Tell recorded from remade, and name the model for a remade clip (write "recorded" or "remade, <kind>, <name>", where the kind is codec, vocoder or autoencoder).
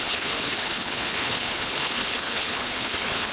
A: remade, codec, HILCodec